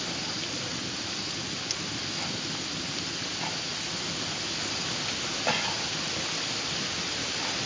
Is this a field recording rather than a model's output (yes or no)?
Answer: yes